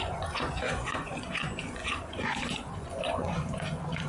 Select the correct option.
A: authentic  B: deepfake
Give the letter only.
B